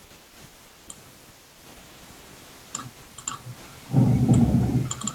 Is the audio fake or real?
real